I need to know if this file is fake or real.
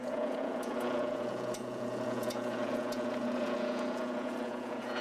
fake